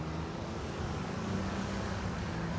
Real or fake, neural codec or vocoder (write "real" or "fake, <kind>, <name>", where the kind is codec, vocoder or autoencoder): fake, codec, DAC